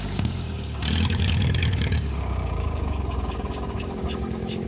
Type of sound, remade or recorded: remade